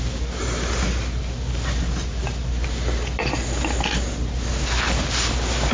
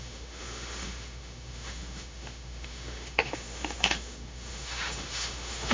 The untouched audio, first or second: first